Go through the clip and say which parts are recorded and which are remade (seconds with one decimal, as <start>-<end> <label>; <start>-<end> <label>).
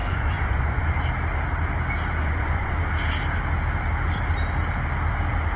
0.0-0.9 remade; 0.9-2.2 recorded; 2.2-2.9 remade; 2.9-5.6 recorded